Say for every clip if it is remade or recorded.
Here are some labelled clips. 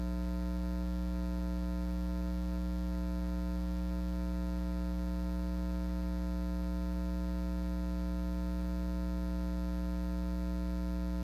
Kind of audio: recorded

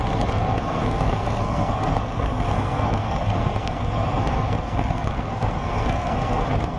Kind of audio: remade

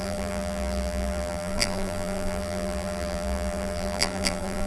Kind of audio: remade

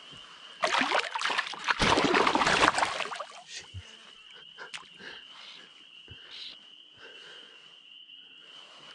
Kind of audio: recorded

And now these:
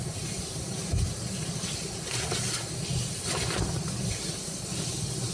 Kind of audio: recorded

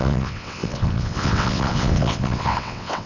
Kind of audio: remade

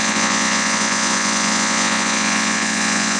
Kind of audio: remade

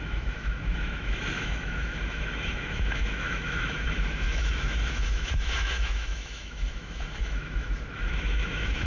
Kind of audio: remade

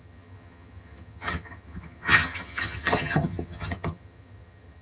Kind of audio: remade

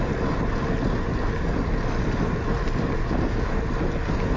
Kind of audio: recorded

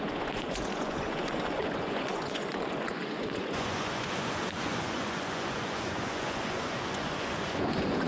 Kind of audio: remade